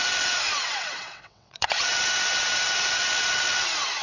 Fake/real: fake